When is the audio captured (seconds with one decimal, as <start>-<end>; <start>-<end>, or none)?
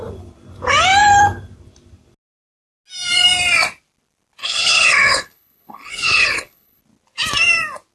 0.0-4.4; 6.8-7.9